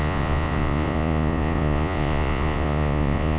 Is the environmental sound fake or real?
fake